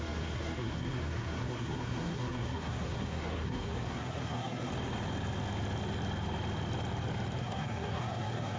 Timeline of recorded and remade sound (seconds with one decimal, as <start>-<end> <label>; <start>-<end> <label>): 0.0-4.7 remade; 4.7-7.4 recorded; 7.4-8.6 remade